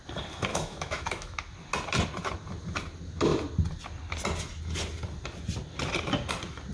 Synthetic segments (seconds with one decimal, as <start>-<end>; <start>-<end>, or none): 0.5-1.4